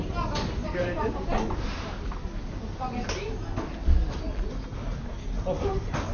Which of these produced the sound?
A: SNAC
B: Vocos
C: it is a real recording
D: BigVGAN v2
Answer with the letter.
C